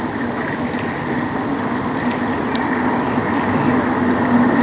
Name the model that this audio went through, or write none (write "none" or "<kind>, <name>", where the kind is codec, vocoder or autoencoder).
none